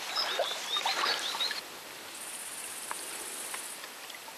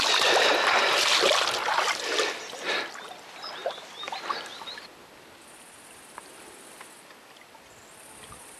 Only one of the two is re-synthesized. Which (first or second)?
first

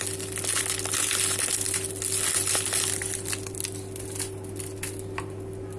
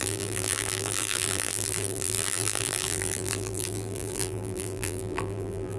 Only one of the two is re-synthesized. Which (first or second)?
second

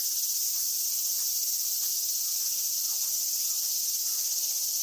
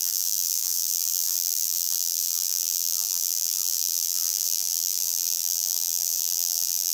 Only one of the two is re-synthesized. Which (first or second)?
second